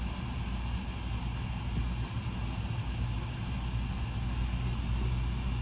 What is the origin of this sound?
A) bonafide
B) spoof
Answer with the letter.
A